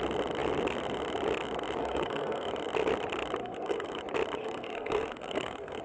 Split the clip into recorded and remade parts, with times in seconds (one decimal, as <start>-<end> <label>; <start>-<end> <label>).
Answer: 0.0-1.8 recorded; 1.8-2.5 remade; 2.5-3.4 recorded; 3.4-4.0 remade; 4.0-4.4 recorded; 4.4-5.8 remade